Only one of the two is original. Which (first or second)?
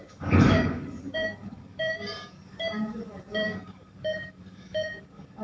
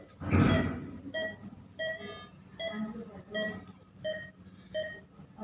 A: second